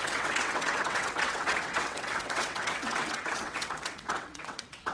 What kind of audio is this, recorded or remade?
remade